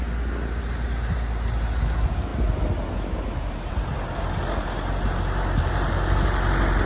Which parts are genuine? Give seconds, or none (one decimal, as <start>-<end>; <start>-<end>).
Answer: 0.0-6.9